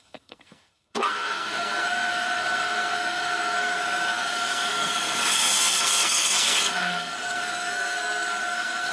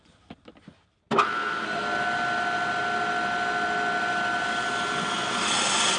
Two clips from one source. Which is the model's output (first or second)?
first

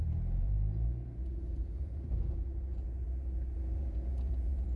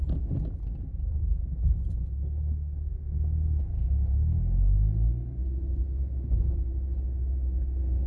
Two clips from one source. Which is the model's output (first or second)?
first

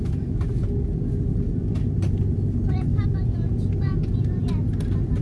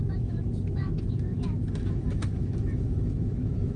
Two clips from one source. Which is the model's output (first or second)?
second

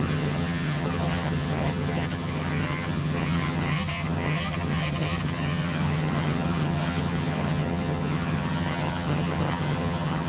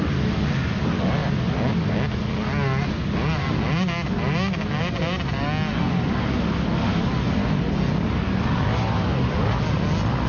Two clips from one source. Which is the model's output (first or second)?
first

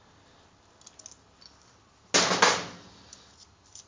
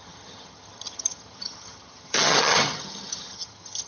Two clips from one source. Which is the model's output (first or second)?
second